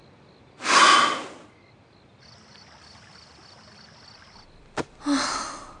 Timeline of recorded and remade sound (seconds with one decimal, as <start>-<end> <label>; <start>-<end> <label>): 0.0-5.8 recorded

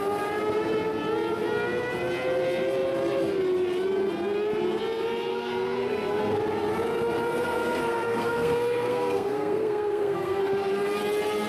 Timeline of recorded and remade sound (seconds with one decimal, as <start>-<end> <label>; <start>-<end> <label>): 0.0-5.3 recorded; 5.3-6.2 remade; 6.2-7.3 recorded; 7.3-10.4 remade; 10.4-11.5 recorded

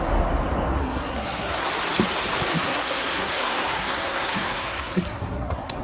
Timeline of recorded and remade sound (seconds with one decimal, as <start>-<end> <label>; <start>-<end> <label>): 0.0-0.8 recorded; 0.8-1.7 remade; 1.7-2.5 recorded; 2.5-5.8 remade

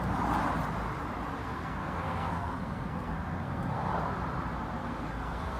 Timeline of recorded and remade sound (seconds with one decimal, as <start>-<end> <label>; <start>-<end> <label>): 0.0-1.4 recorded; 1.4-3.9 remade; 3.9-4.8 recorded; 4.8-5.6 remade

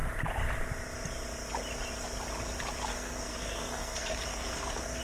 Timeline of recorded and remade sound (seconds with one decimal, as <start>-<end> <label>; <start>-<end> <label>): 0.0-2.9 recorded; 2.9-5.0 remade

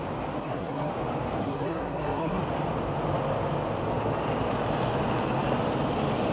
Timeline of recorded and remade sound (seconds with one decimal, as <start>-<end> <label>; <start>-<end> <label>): 0.0-0.4 recorded; 0.4-0.9 remade; 0.9-1.4 recorded; 1.4-2.4 remade; 2.4-6.3 recorded

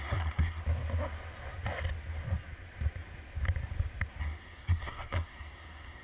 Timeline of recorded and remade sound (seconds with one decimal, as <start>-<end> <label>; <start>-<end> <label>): 0.0-0.6 remade; 0.6-4.2 recorded; 4.2-6.0 remade

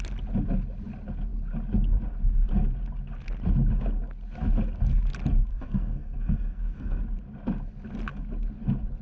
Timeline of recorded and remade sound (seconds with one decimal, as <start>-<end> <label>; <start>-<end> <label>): 0.0-5.5 recorded; 5.5-7.0 remade; 7.0-9.0 recorded